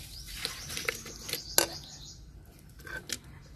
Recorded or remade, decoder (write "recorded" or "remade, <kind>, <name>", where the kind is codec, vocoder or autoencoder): recorded